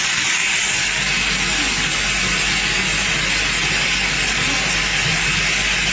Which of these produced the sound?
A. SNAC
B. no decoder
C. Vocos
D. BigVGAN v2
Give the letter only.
B